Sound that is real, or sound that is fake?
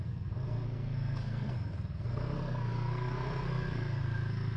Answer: fake